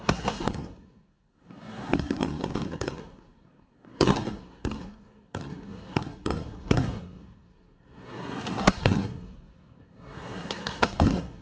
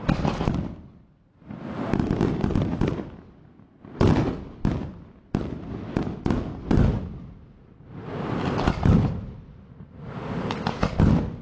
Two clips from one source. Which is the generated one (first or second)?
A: first